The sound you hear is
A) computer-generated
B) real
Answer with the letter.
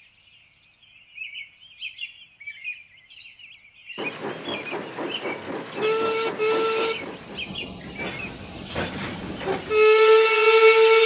B